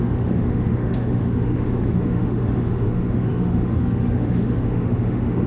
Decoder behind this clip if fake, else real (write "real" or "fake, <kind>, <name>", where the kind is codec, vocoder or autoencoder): fake, autoencoder, DAC-VAE